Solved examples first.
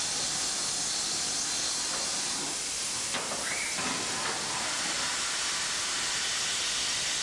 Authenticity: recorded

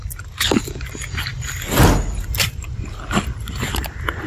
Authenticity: recorded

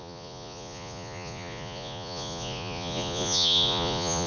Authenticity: remade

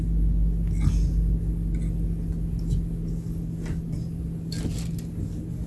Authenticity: recorded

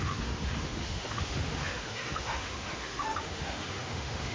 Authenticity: remade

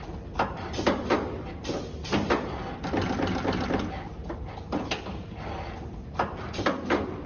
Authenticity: recorded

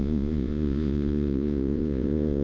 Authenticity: remade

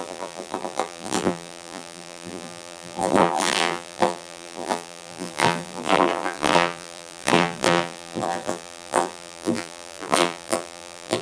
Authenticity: remade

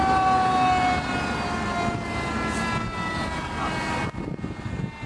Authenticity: recorded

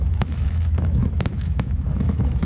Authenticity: remade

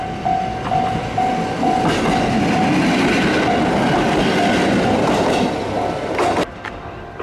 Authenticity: recorded